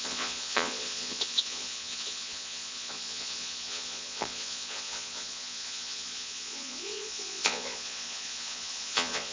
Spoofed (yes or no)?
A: yes